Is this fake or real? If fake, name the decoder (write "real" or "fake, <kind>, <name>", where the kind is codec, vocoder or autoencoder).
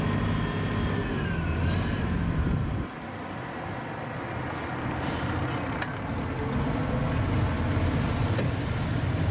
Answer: real